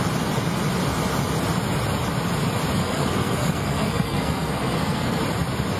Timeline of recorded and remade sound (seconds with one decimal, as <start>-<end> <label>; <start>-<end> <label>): 0.0-2.8 recorded; 2.8-5.2 remade; 5.2-5.8 recorded